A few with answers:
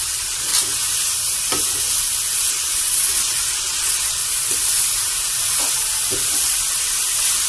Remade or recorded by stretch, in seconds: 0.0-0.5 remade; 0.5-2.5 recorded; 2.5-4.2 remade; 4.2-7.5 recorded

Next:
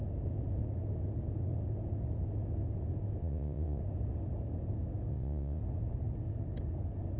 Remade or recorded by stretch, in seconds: 0.0-3.2 recorded; 3.2-3.8 remade; 3.8-5.1 recorded; 5.1-5.6 remade; 5.6-7.2 recorded

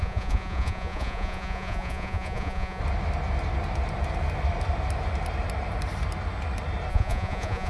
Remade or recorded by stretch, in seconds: 0.0-2.8 remade; 2.8-6.9 recorded; 6.9-7.7 remade

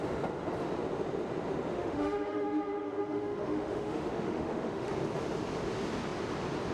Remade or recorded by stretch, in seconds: 0.0-1.7 recorded; 1.7-4.9 remade; 4.9-6.7 recorded